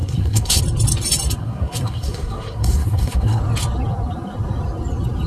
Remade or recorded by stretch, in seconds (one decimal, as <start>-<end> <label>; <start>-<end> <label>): 0.0-0.6 remade; 0.6-1.4 recorded; 1.4-3.4 remade; 3.4-5.3 recorded